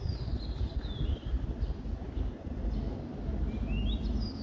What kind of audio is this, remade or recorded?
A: recorded